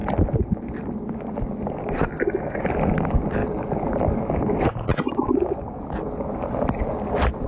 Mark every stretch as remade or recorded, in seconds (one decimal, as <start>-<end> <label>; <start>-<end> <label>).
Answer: 0.0-7.5 recorded